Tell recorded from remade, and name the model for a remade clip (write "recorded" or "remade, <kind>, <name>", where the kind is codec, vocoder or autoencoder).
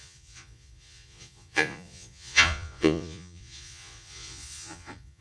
remade, vocoder, Vocos